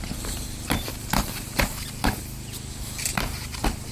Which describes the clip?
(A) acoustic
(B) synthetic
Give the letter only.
A